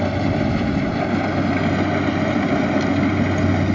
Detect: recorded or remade recorded